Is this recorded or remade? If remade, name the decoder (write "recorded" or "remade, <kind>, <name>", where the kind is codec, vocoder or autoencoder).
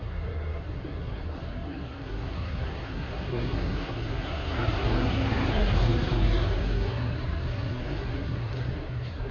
remade, codec, SNAC